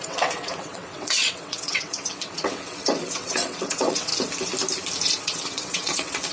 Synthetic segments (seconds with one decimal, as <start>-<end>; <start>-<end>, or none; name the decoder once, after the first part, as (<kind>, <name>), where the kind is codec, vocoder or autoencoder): 0.0-4.1 (vocoder, WaveNeXt); 5.2-6.3